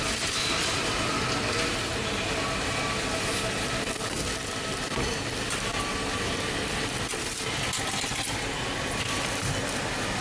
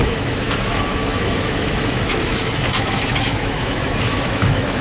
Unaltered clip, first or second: first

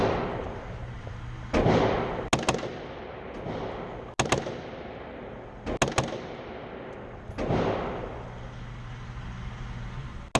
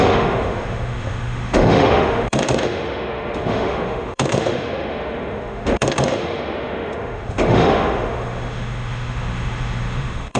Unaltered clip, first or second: first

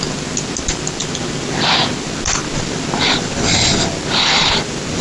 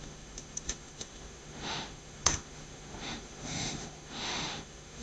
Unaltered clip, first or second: first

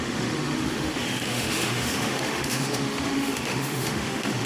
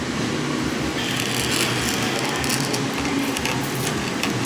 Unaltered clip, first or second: second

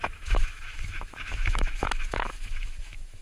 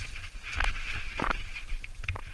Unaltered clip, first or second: second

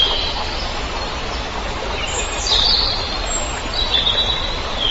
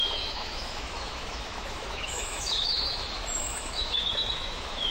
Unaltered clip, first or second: first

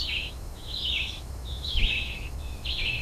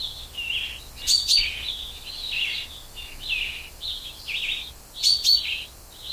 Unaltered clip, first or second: second